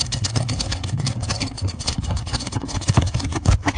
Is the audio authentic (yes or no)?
no